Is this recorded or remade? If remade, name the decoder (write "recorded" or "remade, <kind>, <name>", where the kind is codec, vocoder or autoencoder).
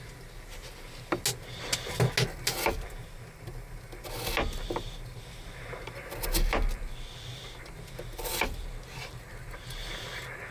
recorded